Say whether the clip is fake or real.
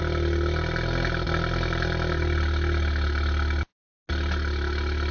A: real